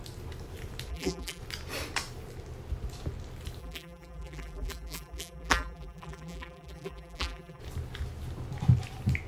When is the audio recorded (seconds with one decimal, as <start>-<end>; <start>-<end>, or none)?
0.0-0.9; 1.4-3.6; 7.6-9.3